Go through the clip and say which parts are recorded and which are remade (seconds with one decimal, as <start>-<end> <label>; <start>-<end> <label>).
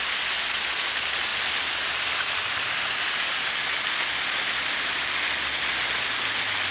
0.0-6.7 recorded